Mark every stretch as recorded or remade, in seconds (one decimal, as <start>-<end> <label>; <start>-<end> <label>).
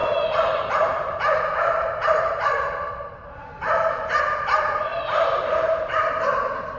0.0-2.9 remade; 2.9-4.9 recorded; 4.9-6.1 remade; 6.1-6.8 recorded